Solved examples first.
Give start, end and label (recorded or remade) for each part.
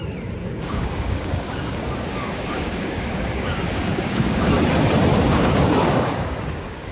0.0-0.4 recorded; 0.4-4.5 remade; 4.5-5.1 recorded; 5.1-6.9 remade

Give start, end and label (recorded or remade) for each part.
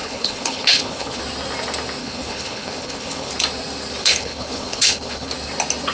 0.0-1.2 remade; 1.2-2.0 recorded; 2.0-3.3 remade; 3.3-4.0 recorded; 4.0-5.3 remade; 5.3-5.9 recorded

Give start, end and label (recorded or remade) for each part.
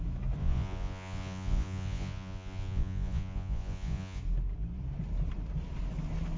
0.0-0.4 recorded; 0.4-4.2 remade; 4.2-6.4 recorded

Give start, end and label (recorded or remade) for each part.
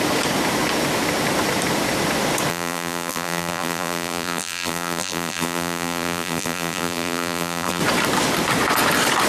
0.0-2.5 recorded; 2.5-7.8 remade; 7.8-9.3 recorded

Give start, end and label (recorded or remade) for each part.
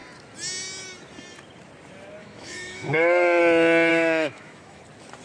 0.0-2.2 recorded; 2.2-3.4 remade; 3.4-3.9 recorded; 3.9-4.8 remade; 4.8-5.2 recorded